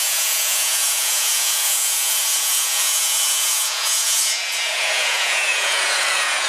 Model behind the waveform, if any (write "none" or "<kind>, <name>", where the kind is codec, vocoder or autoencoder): vocoder, Vocos